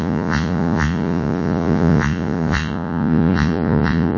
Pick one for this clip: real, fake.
fake